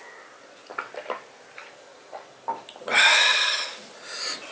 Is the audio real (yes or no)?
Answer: yes